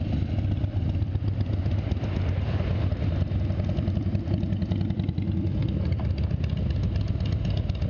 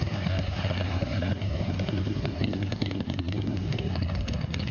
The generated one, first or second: second